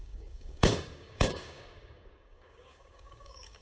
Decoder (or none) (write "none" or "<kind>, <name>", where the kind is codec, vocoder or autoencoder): codec, DAC